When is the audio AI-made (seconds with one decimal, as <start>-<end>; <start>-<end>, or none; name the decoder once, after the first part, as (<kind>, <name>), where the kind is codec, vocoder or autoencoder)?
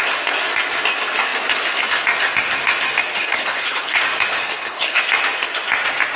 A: 3.1-4.0 (codec, HILCodec); 4.4-5.0